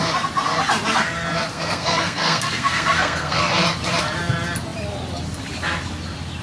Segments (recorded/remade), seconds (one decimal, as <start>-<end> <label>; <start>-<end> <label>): 0.0-1.5 recorded; 1.5-3.4 remade; 3.4-6.4 recorded